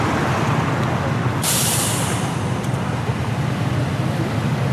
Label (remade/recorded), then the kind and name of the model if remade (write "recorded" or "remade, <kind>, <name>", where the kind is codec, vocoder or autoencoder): recorded